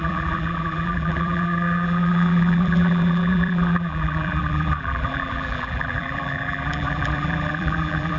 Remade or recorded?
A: remade